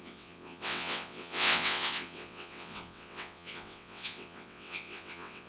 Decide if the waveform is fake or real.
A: fake